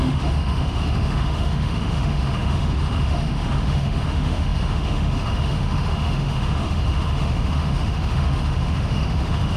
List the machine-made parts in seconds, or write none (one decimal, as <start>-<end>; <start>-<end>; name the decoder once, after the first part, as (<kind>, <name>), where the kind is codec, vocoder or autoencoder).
0.0-9.6 (autoencoder, DAC-VAE)